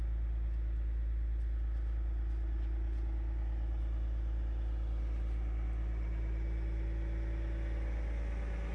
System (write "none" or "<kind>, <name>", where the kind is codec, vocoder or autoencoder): none